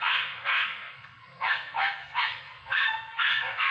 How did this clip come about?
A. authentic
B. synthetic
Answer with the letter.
B